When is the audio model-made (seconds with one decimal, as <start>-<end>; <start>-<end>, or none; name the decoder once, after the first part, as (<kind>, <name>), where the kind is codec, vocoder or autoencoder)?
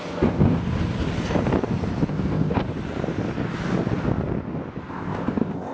0.0-0.6 (codec, ZipCodec); 2.1-2.6; 4.9-5.7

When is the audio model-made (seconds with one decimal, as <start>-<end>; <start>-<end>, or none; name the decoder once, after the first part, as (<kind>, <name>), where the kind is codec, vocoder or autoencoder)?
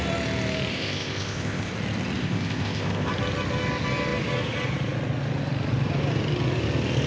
0.7-1.7 (codec, ZipCodec); 2.2-3.1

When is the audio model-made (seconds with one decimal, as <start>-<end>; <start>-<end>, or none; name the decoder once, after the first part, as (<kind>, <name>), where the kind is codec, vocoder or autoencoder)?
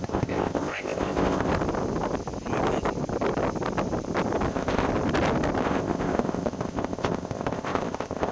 0.0-1.5 (codec, ZipCodec); 4.5-4.9; 5.6-8.3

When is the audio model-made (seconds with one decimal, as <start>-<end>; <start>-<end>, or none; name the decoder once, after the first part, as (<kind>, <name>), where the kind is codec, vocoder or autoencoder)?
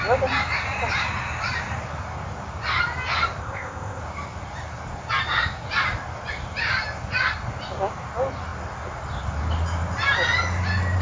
3.4-4.0 (codec, ZipCodec)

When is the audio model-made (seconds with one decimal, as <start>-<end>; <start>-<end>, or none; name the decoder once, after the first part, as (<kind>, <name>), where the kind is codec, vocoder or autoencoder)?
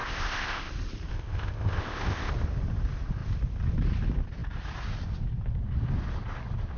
0.0-0.7 (codec, ZipCodec); 1.1-2.3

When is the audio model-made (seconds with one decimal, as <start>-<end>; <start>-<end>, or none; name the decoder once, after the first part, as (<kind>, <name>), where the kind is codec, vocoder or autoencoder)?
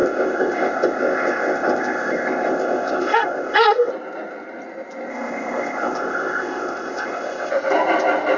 0.0-3.9 (codec, ZipCodec); 5.1-7.5